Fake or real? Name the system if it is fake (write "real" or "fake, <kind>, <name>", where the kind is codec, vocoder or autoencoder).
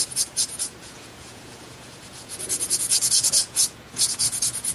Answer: fake, vocoder, Vocos